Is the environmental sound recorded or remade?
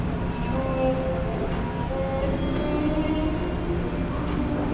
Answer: recorded